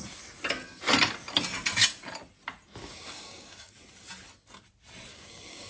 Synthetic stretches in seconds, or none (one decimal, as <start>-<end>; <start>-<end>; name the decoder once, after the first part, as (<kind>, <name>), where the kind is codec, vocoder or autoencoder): 2.8-3.7 (codec, DAC); 5.1-5.7